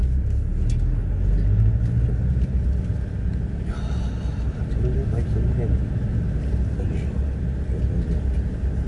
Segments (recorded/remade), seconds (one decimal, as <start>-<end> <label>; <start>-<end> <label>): 0.0-8.9 recorded